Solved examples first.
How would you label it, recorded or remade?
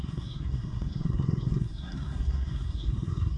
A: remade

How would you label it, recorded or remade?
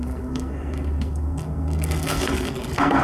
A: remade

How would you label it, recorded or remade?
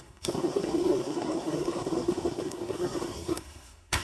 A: remade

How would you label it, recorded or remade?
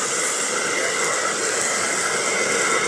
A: recorded